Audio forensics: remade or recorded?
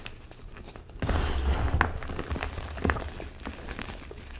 recorded